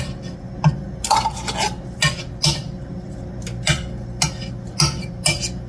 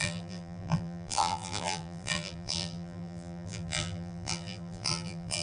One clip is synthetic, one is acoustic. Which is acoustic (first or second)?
first